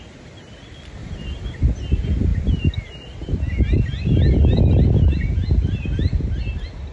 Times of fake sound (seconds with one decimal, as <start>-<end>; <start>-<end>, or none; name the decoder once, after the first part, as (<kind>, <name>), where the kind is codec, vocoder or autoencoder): none